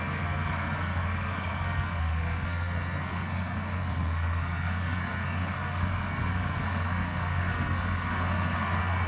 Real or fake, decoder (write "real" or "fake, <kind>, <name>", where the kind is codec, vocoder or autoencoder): fake, codec, SNAC